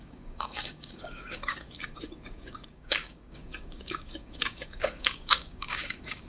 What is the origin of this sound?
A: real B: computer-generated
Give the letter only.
B